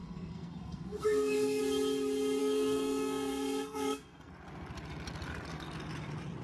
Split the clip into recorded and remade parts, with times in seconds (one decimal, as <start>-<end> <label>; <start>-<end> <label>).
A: 0.0-1.6 remade; 1.6-2.4 recorded; 2.4-4.3 remade; 4.3-6.4 recorded